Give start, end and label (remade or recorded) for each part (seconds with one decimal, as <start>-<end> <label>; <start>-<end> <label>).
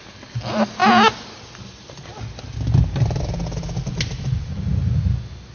0.0-5.5 recorded